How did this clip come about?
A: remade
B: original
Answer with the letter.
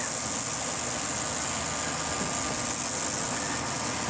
B